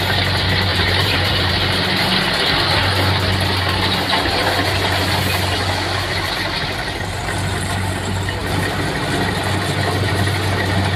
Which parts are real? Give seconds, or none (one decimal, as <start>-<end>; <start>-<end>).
0.0-0.7; 1.5-11.0